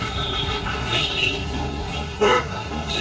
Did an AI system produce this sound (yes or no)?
yes